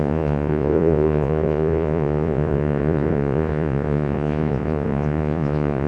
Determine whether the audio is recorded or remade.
remade